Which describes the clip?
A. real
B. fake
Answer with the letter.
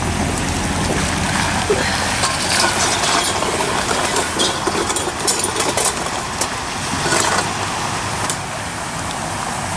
A